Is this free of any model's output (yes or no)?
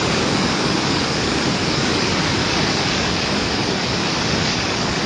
no